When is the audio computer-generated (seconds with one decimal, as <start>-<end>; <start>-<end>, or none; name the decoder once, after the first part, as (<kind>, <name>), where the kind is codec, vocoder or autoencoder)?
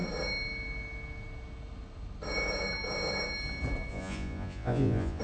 3.9-5.2 (vocoder, Vocos)